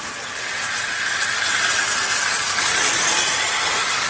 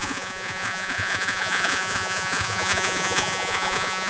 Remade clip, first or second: second